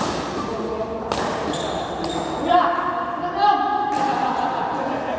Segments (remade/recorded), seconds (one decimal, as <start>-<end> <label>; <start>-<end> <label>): 0.0-5.2 recorded

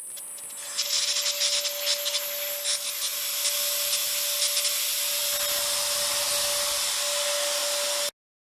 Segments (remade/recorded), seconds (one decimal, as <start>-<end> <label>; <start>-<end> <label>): 0.0-8.5 recorded

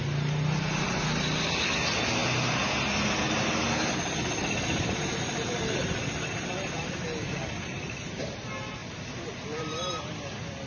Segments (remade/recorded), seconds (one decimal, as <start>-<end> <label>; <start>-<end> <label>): 0.0-10.7 recorded

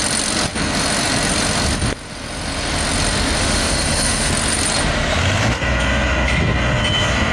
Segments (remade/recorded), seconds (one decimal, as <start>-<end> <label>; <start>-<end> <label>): 0.0-3.4 recorded; 3.4-4.3 remade; 4.3-7.3 recorded

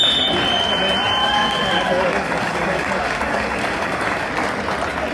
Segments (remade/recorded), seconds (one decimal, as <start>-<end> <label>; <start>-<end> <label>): 0.0-1.2 recorded; 1.2-4.3 remade; 4.3-5.1 recorded

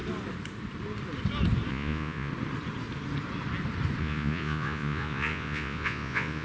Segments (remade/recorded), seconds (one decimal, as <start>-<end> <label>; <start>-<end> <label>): 0.0-1.7 recorded; 1.7-2.3 remade; 2.3-4.0 recorded; 4.0-6.4 remade

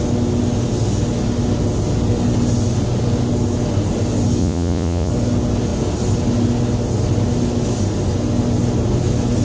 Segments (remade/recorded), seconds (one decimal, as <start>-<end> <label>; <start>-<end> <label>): 0.0-4.4 recorded; 4.4-5.1 remade; 5.1-9.4 recorded

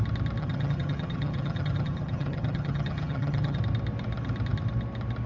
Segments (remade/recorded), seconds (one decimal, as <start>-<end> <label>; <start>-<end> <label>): 0.0-0.4 recorded; 0.4-3.6 remade; 3.6-5.3 recorded